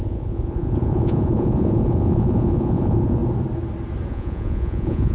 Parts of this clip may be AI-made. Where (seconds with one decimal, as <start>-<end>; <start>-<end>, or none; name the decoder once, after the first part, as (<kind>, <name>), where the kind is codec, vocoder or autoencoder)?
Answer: 0.0-3.2 (vocoder, Vocos); 4.1-5.1